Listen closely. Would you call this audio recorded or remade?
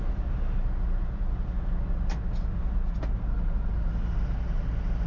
recorded